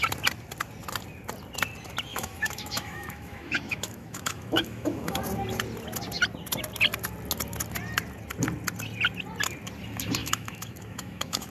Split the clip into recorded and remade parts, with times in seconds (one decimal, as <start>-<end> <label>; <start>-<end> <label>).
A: 0.0-2.1 recorded; 2.1-5.2 remade; 5.2-10.2 recorded; 10.2-11.5 remade